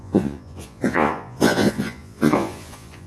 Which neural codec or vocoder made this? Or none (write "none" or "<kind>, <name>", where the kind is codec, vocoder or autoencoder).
vocoder, Vocos